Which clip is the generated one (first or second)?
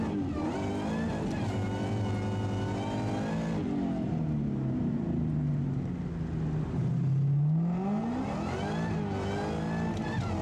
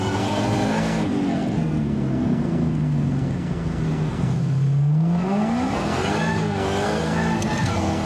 second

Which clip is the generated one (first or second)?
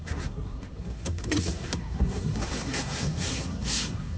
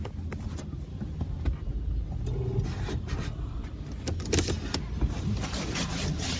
first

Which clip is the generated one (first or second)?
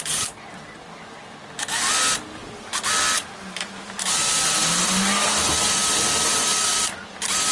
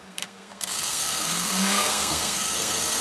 second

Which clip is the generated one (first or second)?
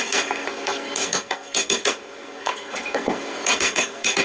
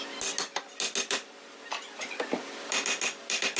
first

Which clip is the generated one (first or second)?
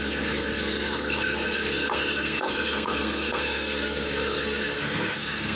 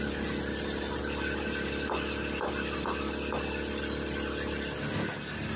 first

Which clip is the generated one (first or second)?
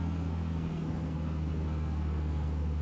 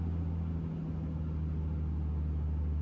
first